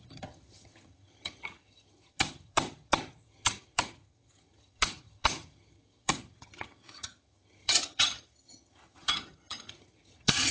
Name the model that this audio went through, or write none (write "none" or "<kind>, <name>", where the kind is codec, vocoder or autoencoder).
vocoder, HiFi-GAN